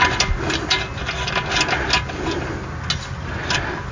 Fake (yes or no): no